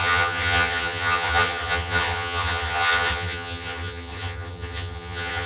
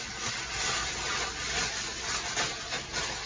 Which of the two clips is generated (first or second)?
first